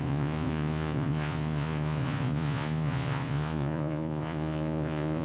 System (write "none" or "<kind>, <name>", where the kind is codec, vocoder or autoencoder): vocoder, Vocos